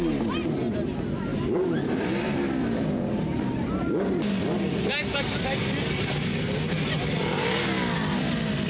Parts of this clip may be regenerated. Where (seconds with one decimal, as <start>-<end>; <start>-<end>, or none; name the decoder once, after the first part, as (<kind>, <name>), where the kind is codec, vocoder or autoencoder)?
1.3-3.5 (vocoder, BigVGAN v2)